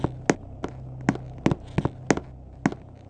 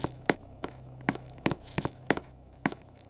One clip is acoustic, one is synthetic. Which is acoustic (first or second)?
first